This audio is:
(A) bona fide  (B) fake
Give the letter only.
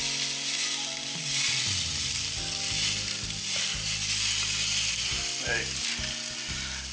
A